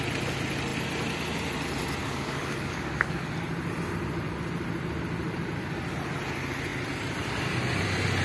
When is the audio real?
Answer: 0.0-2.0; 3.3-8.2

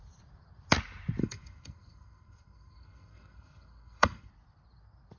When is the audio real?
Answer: 0.0-1.2; 4.3-5.2

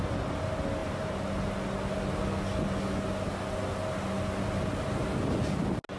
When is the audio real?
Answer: 0.0-6.0

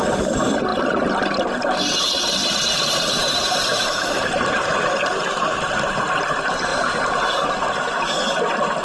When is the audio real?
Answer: 0.0-2.4; 5.1-6.7; 7.5-8.8

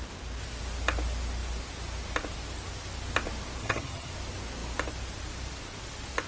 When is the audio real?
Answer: 0.0-3.6; 4.1-6.3

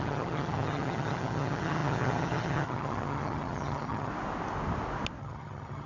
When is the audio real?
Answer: 4.1-5.2

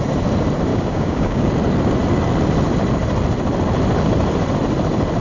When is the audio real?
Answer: 0.0-0.7; 1.5-5.2